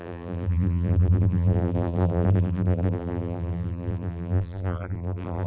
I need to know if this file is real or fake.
fake